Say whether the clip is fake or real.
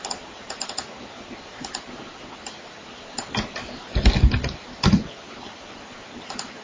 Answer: real